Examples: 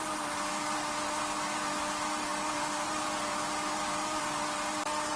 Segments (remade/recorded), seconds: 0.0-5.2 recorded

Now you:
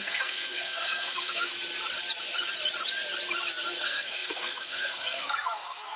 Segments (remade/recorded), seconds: 0.0-1.5 remade; 1.5-3.8 recorded; 3.8-6.0 remade

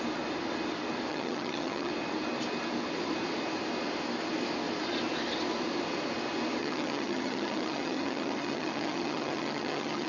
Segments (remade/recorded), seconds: 0.0-1.1 recorded; 1.1-1.9 remade; 1.9-6.6 recorded; 6.6-10.1 remade

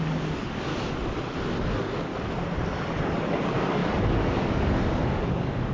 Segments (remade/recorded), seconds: 0.0-0.7 remade; 0.7-1.6 recorded; 1.6-2.1 remade; 2.1-3.4 recorded; 3.4-5.7 remade

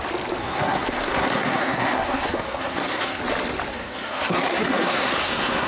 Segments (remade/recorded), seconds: 0.0-0.4 recorded; 0.4-3.2 remade; 3.2-3.7 recorded; 3.7-5.7 remade

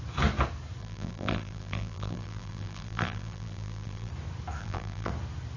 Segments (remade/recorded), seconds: 0.0-0.8 recorded; 0.8-4.1 remade; 4.1-4.6 recorded; 4.6-5.1 remade; 5.1-5.6 recorded

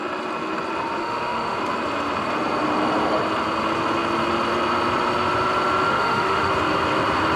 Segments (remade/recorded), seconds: 0.0-1.0 recorded; 1.0-1.6 remade; 1.6-5.9 recorded; 5.9-6.5 remade; 6.5-7.4 recorded

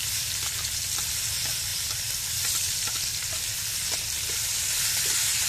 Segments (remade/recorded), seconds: 0.0-5.5 recorded